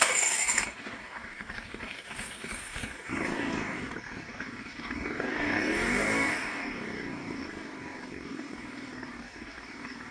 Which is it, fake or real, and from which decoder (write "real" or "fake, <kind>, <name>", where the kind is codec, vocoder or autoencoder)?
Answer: fake, codec, DAC